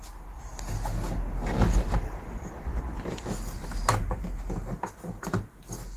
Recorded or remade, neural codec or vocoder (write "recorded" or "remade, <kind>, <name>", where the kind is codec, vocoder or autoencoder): recorded